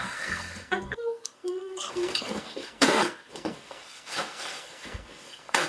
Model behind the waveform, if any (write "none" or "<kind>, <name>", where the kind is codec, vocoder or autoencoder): codec, SNAC